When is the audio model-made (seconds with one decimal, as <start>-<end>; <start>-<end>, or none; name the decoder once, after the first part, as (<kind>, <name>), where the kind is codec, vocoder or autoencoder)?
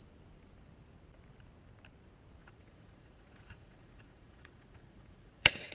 2.4-5.7 (vocoder, Vocos)